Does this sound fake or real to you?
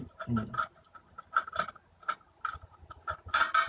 real